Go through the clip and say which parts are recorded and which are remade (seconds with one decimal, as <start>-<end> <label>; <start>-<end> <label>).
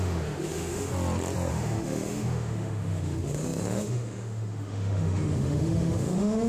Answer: 0.0-0.9 remade; 0.9-1.5 recorded; 1.5-6.5 remade